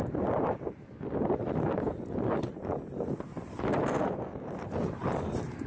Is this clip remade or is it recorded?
recorded